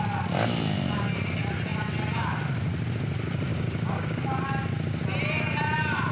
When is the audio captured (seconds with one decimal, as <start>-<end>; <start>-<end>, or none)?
0.0-3.5; 4.5-6.1